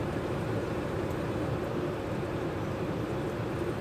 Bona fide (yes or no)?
no